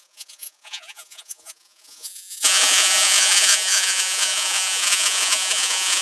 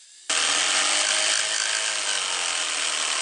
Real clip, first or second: second